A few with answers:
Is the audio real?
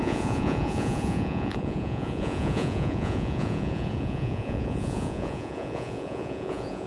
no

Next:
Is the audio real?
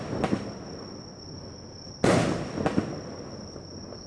yes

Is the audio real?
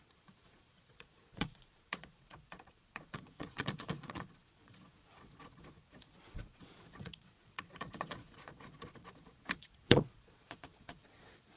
no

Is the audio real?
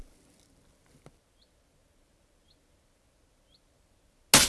yes